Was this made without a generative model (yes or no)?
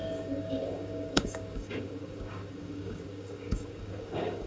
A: no